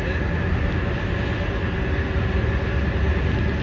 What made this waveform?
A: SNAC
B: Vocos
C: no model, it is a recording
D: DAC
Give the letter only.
C